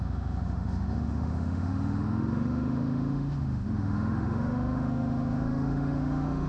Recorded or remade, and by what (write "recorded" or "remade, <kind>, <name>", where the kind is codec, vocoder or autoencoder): remade, autoencoder, DAC-VAE